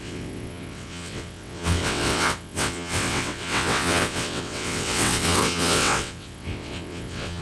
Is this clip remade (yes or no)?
yes